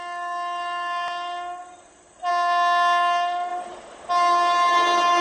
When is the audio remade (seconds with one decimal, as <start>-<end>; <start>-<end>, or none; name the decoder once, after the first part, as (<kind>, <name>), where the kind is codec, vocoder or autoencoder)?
3.5-4.1 (vocoder, BigVGAN v2)